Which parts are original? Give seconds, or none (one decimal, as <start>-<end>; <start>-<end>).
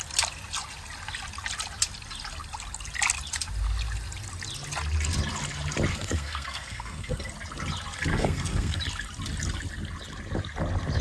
0.0-5.9; 7.3-8.1; 8.8-11.0